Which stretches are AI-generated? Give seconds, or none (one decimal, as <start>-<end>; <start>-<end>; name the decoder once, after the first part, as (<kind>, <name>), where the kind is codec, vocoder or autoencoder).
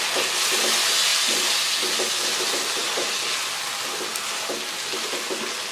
none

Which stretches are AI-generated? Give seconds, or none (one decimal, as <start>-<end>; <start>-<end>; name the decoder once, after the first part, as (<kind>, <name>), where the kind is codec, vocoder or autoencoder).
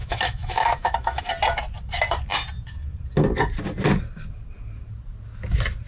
0.0-1.2 (autoencoder, DAC-VAE)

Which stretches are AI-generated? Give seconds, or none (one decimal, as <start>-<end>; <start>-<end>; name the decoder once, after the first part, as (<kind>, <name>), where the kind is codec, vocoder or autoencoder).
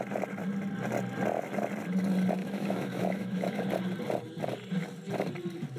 2.4-3.6 (autoencoder, DAC-VAE)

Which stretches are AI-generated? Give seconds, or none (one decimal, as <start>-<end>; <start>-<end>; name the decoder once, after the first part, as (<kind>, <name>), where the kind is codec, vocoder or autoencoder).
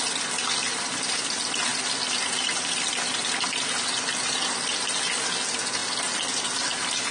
none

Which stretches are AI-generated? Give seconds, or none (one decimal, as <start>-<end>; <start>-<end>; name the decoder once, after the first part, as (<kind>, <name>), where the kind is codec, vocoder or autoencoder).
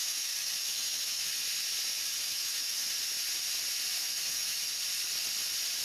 0.0-1.3 (autoencoder, DAC-VAE); 2.2-2.9; 4.0-4.8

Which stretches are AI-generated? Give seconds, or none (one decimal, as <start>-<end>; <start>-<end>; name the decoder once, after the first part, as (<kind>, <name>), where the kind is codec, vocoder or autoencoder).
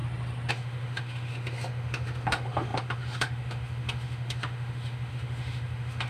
0.5-6.1 (autoencoder, DAC-VAE)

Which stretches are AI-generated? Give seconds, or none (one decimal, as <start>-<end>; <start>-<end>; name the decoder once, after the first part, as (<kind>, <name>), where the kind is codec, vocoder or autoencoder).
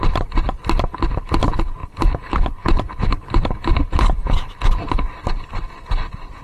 none